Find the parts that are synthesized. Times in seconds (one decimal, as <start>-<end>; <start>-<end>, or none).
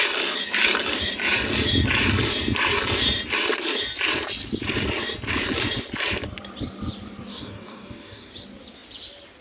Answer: 7.3-8.3